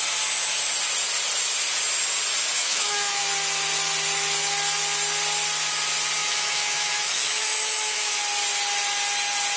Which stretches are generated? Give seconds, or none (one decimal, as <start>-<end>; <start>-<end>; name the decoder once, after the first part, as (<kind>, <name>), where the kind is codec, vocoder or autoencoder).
2.6-3.2 (autoencoder, DAC-VAE); 6.2-8.2